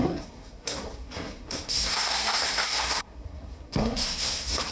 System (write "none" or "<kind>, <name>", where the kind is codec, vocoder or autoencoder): codec, SNAC